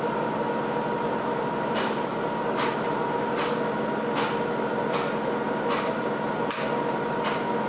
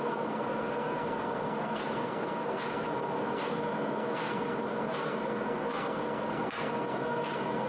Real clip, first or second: first